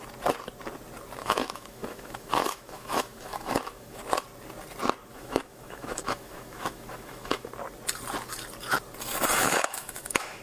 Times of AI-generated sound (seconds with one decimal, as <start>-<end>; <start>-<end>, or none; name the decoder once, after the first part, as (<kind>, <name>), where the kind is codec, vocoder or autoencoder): 1.2-4.0 (autoencoder, DAC-VAE); 5.1-7.5; 9.4-10.4